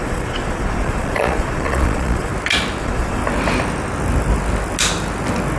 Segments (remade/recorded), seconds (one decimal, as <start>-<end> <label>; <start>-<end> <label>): 0.0-2.3 remade; 2.3-2.8 recorded; 2.8-3.2 remade; 3.2-5.6 recorded